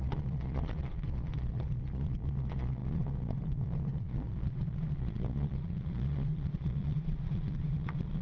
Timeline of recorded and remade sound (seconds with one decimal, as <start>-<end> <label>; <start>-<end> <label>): 0.0-8.2 remade